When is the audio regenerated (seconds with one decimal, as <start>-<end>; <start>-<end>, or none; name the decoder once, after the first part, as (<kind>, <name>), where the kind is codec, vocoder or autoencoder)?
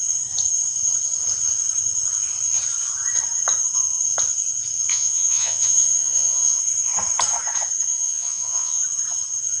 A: 4.9-6.6 (vocoder, Vocos); 7.9-8.8